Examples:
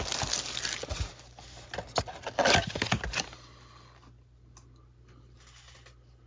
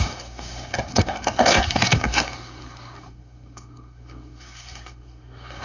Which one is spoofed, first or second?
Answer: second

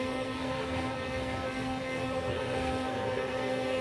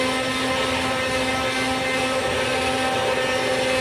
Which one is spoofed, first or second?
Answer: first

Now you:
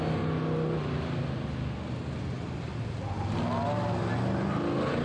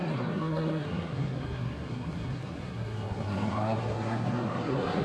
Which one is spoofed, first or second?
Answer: second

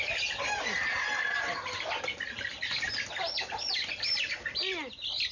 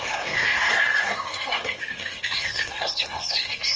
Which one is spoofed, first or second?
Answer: second